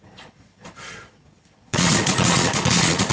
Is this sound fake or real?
fake